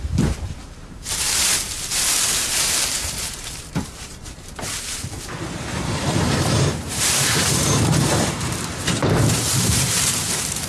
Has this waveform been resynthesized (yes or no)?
yes